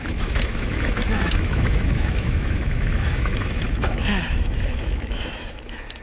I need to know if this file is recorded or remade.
remade